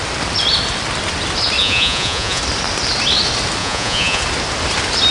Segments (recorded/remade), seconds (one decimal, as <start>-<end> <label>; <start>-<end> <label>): 0.0-1.6 recorded; 1.6-2.4 remade; 2.4-3.6 recorded; 3.6-4.2 remade; 4.2-5.1 recorded